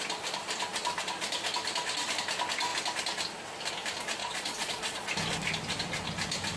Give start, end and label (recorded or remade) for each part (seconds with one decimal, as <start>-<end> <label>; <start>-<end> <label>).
0.0-4.2 recorded; 4.2-5.1 remade; 5.1-6.6 recorded